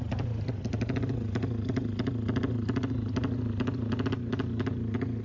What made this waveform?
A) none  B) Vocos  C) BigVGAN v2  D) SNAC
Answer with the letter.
A